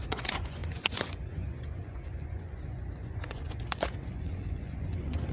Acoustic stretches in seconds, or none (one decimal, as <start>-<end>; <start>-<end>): none